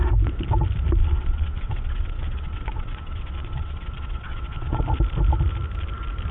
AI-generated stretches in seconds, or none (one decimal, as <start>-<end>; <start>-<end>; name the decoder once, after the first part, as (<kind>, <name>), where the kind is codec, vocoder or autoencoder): 1.0-4.8 (vocoder, WaveNeXt)